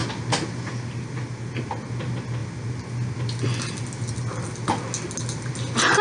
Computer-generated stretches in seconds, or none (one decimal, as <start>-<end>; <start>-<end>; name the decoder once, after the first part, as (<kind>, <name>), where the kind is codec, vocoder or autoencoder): none